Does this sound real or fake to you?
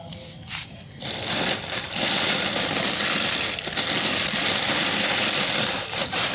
fake